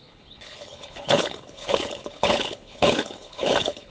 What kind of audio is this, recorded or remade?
remade